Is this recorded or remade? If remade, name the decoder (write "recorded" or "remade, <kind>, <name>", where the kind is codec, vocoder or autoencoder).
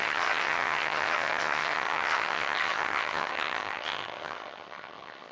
remade, vocoder, HiFi-GAN